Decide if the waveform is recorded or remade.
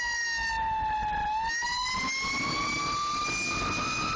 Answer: recorded